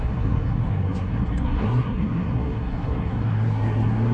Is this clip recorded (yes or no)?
no